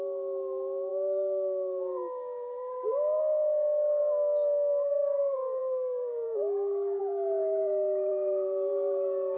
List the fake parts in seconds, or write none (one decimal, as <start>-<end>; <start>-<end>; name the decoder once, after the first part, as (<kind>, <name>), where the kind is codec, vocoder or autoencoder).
none